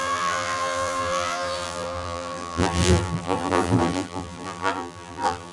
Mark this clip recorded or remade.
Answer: remade